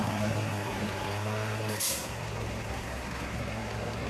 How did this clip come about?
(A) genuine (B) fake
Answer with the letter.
B